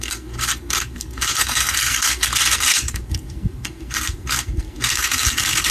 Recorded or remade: remade